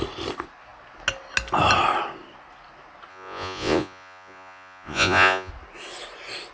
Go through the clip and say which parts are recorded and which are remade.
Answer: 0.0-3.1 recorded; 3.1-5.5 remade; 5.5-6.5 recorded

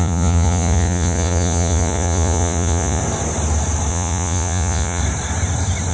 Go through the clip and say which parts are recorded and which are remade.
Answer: 0.0-3.0 remade; 3.0-3.9 recorded; 3.9-5.0 remade; 5.0-5.9 recorded

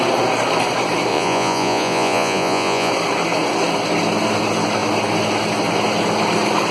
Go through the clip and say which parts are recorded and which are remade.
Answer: 0.0-1.1 recorded; 1.1-2.9 remade; 2.9-6.7 recorded

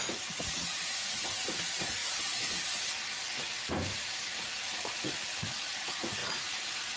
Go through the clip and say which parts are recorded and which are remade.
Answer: 0.0-2.0 remade; 2.0-3.7 recorded; 3.7-7.0 remade

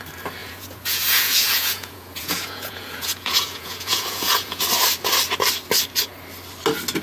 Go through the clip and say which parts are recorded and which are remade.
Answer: 0.0-0.4 recorded; 0.4-4.6 remade; 4.6-7.0 recorded

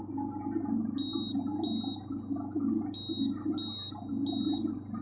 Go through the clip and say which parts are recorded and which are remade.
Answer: 0.0-5.0 recorded